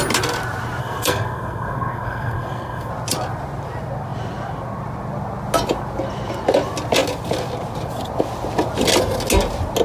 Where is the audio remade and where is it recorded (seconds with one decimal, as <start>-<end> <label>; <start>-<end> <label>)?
0.0-0.8 recorded; 0.8-2.9 remade; 2.9-9.8 recorded